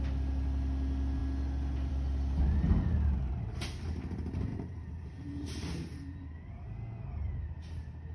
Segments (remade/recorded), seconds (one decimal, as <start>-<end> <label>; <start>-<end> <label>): 0.0-4.5 recorded; 4.5-6.5 remade; 6.5-8.1 recorded